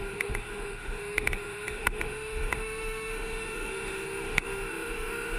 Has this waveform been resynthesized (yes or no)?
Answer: yes